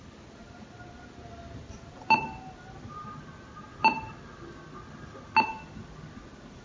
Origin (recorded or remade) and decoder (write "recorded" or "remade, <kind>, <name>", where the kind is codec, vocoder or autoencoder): recorded